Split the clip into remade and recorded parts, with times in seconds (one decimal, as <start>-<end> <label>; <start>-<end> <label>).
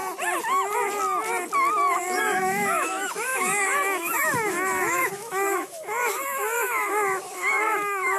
0.0-2.2 recorded; 2.2-8.2 remade